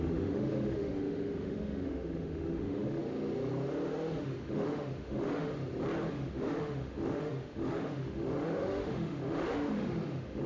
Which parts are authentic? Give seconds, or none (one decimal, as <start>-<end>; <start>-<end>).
3.0-4.2; 5.5-6.1